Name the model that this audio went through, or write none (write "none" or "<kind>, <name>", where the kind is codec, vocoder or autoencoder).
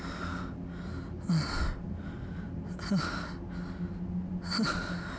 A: none